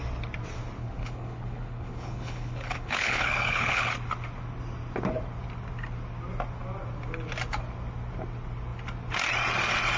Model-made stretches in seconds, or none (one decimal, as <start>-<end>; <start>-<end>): 0.8-3.9